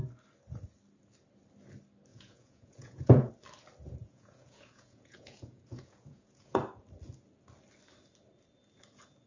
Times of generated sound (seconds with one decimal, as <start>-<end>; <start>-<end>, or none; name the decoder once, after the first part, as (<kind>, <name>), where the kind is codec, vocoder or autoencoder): 2.1-3.3 (vocoder, Vocos); 4.0-6.6